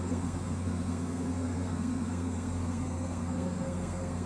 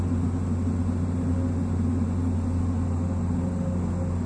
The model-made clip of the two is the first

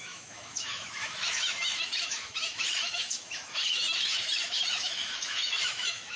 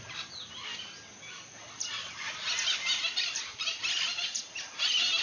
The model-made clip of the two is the first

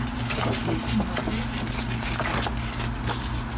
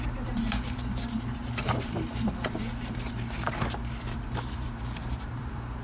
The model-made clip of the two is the second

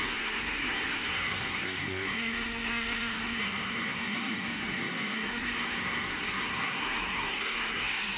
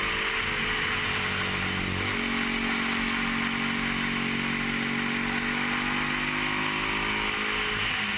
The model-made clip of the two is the first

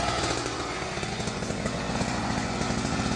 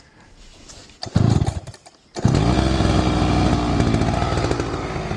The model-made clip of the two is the first